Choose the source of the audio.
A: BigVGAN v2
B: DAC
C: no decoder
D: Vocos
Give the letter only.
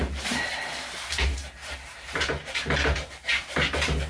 A